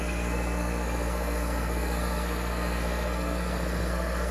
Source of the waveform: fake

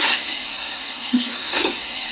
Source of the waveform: fake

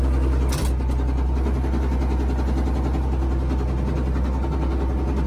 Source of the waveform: real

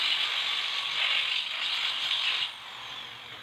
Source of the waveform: real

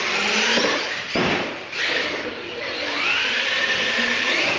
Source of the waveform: real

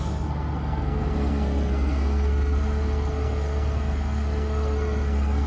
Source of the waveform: fake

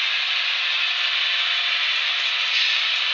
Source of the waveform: real